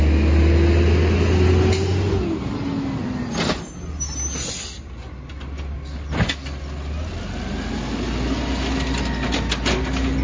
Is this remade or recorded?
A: recorded